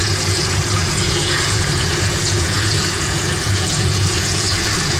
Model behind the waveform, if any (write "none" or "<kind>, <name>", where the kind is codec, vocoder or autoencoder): vocoder, Vocos